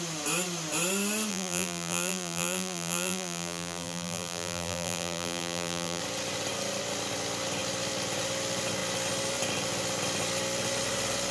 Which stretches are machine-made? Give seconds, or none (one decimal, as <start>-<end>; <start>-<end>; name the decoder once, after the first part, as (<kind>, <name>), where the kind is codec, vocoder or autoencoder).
1.3-6.0 (vocoder, BigVGAN v2)